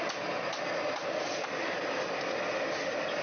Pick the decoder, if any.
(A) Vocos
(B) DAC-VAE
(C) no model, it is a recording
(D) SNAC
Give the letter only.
C